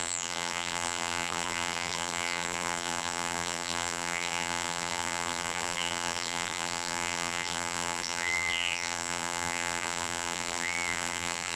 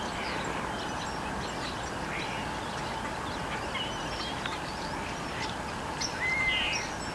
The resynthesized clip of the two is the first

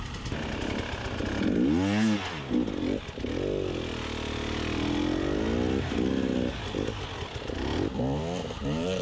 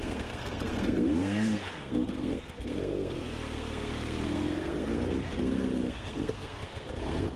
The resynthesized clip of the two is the second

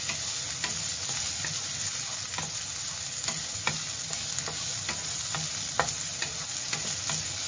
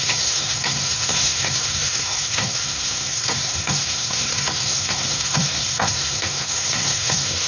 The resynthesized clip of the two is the second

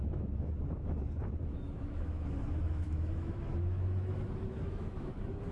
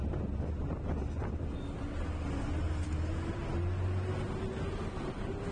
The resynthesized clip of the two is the first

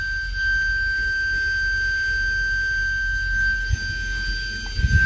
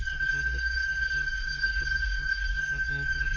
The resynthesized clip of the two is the second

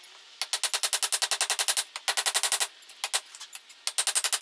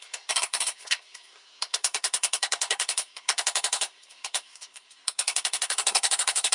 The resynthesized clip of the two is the second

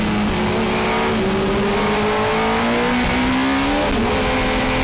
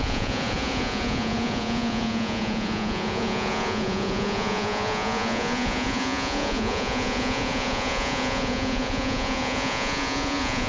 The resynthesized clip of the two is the second